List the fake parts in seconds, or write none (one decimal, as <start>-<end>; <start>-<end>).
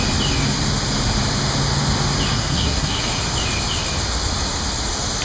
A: 2.3-3.0